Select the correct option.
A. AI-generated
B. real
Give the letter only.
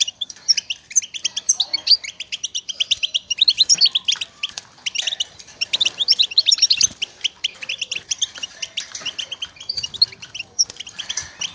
A